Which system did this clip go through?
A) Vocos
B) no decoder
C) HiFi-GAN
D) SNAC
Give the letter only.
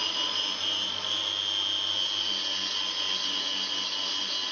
B